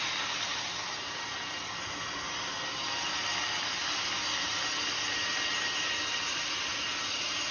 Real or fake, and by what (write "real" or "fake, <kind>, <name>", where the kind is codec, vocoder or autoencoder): real